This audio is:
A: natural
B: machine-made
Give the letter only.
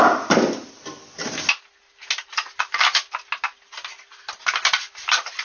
A